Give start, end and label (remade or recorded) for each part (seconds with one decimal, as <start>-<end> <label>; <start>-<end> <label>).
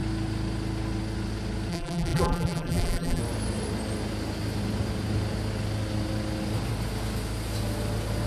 0.0-1.7 recorded; 1.7-3.2 remade; 3.2-8.3 recorded